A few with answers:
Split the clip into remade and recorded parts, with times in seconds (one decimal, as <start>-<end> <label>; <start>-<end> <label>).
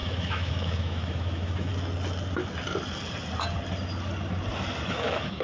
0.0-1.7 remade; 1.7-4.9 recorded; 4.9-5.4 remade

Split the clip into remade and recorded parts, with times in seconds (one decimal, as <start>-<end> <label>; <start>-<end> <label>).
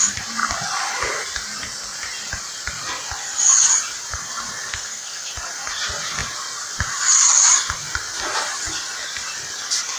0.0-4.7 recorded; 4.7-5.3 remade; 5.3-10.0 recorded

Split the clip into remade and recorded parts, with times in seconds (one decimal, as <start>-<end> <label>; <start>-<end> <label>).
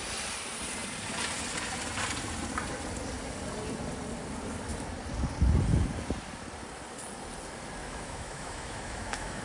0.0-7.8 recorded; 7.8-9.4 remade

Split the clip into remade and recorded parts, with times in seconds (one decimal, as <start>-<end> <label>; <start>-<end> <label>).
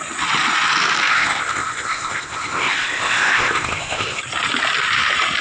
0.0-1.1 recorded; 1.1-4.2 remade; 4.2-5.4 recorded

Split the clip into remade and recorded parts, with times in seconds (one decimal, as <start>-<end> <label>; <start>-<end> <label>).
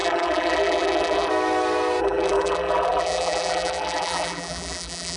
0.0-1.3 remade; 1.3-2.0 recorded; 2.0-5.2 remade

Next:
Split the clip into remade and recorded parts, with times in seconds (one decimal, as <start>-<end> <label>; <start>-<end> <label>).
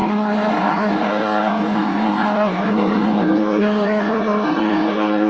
0.0-5.3 remade